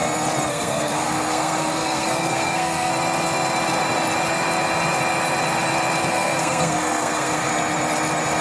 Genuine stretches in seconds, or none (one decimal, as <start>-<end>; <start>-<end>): 0.0-0.5; 2.9-6.1; 7.5-8.4